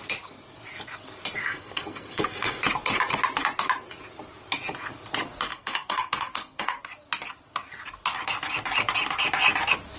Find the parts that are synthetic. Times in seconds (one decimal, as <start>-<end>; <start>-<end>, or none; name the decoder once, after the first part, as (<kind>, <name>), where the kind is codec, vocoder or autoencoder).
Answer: 1.4-2.6 (codec, SNAC); 5.5-6.8